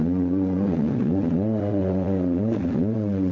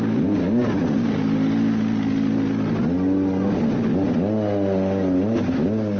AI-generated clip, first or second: first